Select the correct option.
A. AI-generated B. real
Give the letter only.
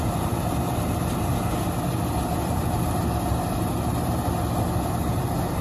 B